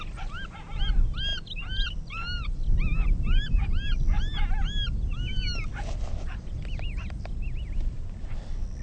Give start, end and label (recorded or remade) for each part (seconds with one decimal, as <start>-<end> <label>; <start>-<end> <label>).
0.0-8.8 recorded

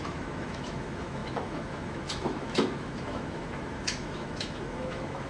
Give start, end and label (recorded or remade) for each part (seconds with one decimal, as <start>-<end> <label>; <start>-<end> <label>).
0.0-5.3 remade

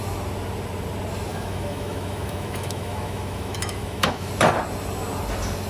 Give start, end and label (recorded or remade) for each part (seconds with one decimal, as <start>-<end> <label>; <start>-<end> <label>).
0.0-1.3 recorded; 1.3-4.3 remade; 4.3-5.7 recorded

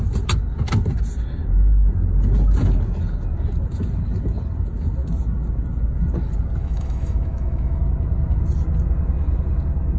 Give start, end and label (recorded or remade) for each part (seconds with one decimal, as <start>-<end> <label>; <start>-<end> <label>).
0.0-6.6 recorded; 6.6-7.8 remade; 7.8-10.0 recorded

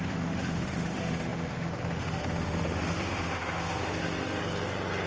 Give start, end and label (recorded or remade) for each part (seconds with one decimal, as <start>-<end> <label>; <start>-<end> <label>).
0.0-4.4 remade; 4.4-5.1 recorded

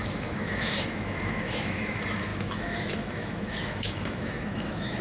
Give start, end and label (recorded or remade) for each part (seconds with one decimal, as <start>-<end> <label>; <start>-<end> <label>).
0.0-5.0 remade

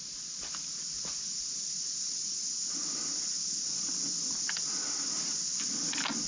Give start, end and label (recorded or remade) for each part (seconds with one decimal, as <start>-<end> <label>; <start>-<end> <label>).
0.0-6.3 recorded